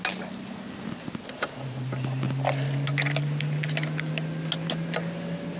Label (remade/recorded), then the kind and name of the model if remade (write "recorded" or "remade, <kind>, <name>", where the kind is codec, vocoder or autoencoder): recorded